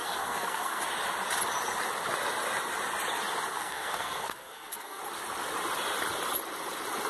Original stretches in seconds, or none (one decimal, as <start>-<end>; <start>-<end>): 0.8-3.5; 5.0-7.1